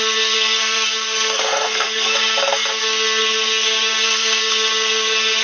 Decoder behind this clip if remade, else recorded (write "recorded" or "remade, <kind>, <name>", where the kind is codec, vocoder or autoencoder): remade, codec, SNAC